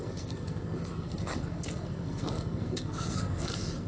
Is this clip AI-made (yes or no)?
yes